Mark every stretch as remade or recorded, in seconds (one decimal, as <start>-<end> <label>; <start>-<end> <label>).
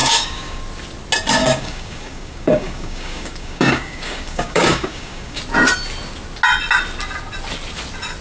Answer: 0.0-0.6 remade; 0.6-1.4 recorded; 1.4-5.4 remade; 5.4-8.2 recorded